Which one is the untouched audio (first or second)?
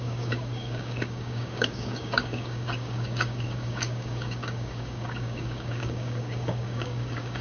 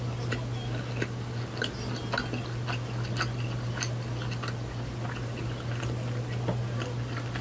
second